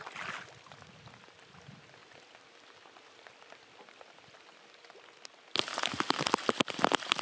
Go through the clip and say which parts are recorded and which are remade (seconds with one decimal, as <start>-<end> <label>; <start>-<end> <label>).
0.0-7.2 recorded